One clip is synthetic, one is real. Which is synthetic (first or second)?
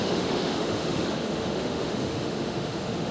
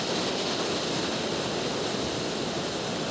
first